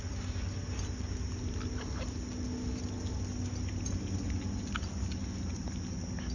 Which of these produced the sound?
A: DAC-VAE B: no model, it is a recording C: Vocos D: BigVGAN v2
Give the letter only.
B